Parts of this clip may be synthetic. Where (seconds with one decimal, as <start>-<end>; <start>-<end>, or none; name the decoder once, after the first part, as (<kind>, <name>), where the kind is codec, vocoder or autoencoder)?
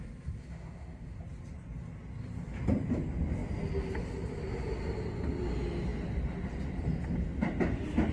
0.4-1.2 (autoencoder, DAC-VAE)